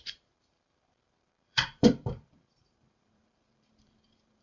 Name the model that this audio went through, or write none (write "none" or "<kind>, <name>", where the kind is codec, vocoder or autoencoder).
vocoder, BigVGAN v2